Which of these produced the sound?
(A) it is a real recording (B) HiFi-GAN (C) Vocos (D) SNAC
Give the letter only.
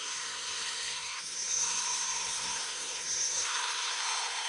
D